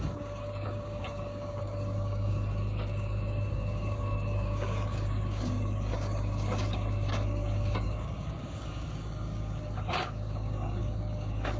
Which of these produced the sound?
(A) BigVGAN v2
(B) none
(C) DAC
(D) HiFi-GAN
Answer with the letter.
C